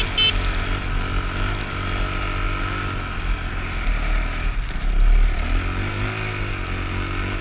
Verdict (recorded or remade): recorded